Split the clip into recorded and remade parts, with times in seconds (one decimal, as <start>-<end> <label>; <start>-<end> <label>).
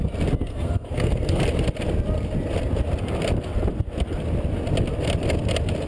0.0-0.5 recorded; 0.5-1.4 remade; 1.4-5.9 recorded